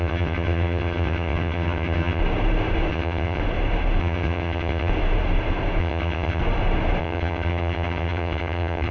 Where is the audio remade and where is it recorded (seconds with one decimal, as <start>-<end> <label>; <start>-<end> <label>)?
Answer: 0.0-2.2 remade; 2.2-2.9 recorded; 2.9-3.4 remade; 3.4-4.0 recorded; 4.0-4.9 remade; 4.9-5.8 recorded; 5.8-6.4 remade; 6.4-7.0 recorded; 7.0-8.9 remade